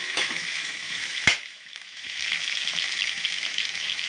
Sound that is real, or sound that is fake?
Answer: fake